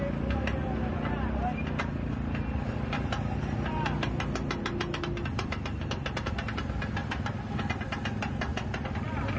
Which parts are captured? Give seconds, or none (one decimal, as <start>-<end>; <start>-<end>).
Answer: 0.0-9.4